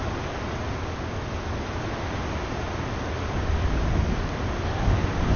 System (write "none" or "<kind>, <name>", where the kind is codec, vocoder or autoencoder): none